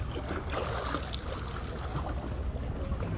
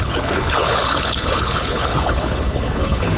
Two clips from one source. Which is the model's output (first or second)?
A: second